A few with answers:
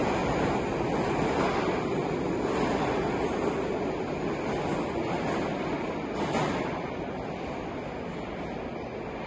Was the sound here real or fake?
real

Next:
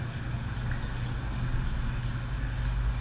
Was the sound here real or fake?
real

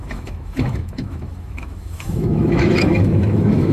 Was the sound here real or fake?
fake